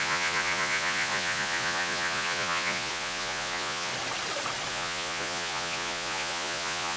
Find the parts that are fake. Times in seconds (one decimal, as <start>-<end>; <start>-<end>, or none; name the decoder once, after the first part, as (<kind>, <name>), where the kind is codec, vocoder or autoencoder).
0.0-3.9 (vocoder, Vocos); 4.7-7.0